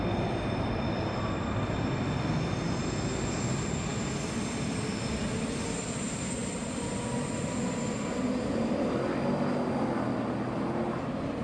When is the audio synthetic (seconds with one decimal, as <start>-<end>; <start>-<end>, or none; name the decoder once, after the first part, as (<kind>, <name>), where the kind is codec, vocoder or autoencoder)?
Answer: none